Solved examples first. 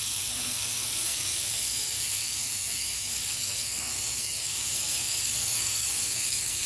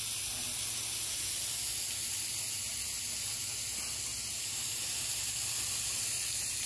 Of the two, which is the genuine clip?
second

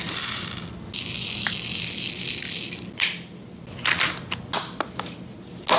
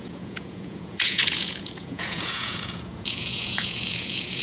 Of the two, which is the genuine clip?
first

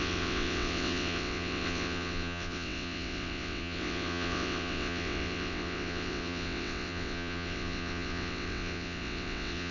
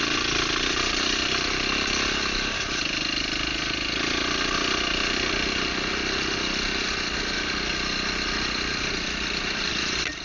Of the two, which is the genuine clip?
second